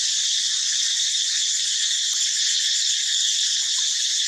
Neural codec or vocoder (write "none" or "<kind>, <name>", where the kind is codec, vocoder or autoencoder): none